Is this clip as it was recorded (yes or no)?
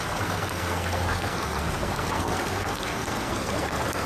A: no